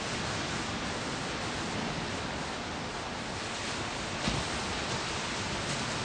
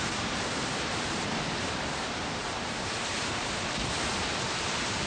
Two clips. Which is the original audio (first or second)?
first